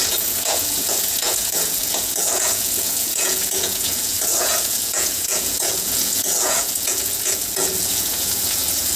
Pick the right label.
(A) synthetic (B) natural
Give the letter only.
A